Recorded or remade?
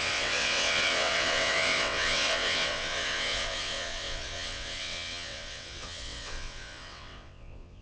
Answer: remade